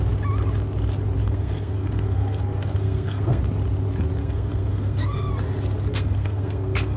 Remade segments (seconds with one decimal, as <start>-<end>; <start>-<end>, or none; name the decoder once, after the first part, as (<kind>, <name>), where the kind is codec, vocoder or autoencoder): 1.2-3.4 (codec, SNAC); 4.2-5.3; 5.9-7.0